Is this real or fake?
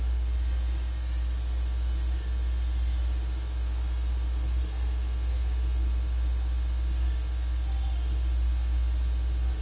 real